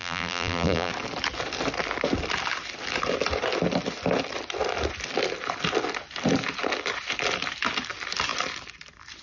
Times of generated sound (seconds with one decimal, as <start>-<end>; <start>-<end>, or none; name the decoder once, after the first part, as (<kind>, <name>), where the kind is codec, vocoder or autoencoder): 0.0-0.9 (vocoder, BigVGAN v2)